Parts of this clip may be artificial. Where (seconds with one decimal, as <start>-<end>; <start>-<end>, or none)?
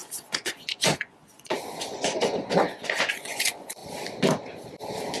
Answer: 0.0-3.8